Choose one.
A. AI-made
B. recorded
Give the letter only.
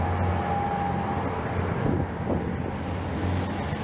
B